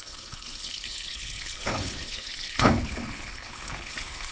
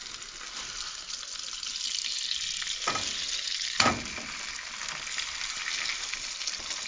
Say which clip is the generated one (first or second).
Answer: first